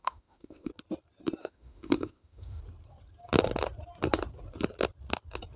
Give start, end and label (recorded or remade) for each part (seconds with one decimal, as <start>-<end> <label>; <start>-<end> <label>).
0.0-0.7 remade; 0.7-1.4 recorded; 1.4-2.6 remade; 2.6-5.6 recorded